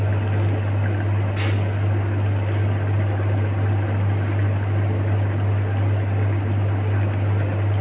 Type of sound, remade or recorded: recorded